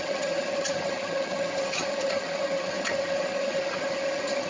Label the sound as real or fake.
fake